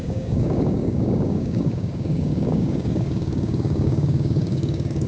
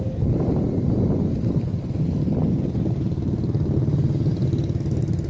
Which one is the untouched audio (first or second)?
second